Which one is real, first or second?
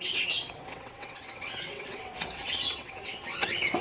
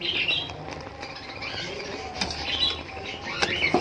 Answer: second